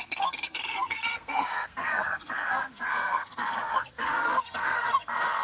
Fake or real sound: fake